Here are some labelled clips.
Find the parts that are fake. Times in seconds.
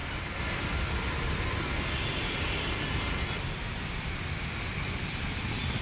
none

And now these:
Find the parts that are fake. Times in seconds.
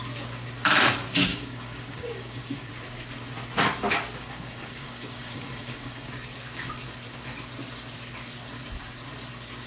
1.3-2.7 (codec, DAC); 4.2-6.1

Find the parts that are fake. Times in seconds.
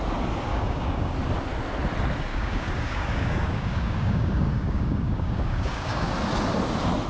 0.5-1.1 (codec, DAC); 2.3-6.1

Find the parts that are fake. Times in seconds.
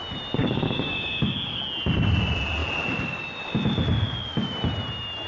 0.4-1.6 (codec, DAC)